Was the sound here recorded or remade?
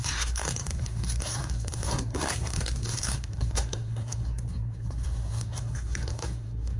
remade